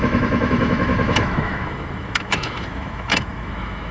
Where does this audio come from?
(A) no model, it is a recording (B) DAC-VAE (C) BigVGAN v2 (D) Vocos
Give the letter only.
B